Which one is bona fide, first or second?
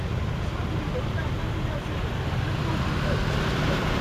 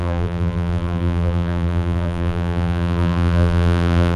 first